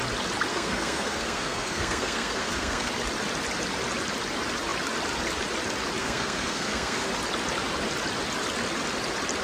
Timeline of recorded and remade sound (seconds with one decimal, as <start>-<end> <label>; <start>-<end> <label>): 0.0-0.5 recorded; 0.5-2.9 remade; 2.9-6.0 recorded; 6.0-7.1 remade; 7.1-9.4 recorded